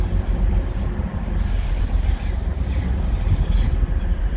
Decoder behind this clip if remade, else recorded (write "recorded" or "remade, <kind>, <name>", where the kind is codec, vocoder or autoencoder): remade, vocoder, BigVGAN v2